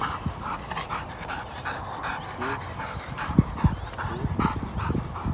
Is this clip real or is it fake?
real